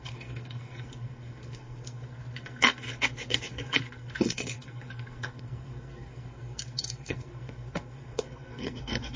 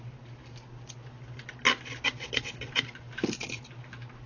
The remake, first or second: first